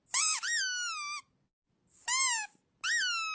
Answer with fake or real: real